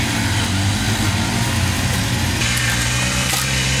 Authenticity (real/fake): real